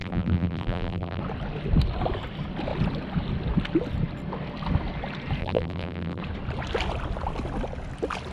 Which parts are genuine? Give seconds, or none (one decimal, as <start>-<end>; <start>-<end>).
1.2-5.4; 6.2-8.3